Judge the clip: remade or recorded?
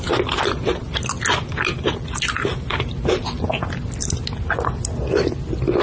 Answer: recorded